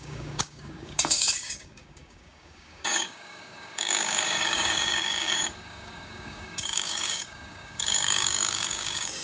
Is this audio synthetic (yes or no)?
yes